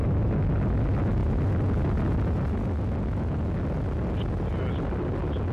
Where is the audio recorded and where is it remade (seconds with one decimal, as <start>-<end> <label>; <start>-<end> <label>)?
0.0-5.5 recorded